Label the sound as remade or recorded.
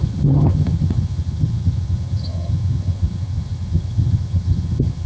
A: remade